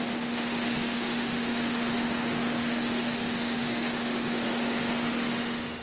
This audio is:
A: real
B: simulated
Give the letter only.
B